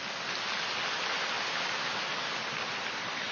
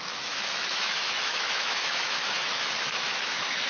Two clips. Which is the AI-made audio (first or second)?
second